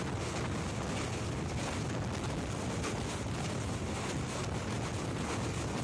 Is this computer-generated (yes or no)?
no